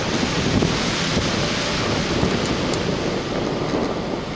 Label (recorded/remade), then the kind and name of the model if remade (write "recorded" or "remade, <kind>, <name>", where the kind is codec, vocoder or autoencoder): recorded